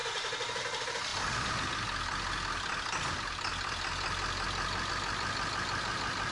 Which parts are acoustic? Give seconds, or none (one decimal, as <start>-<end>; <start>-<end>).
0.0-6.3